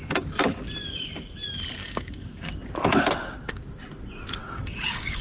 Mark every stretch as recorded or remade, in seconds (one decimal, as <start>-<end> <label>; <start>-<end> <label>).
0.0-1.8 recorded; 1.8-2.5 remade; 2.5-4.4 recorded; 4.4-5.2 remade